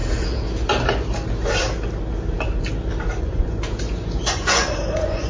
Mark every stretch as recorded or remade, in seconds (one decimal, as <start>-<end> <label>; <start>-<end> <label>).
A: 0.0-3.2 recorded; 3.2-5.3 remade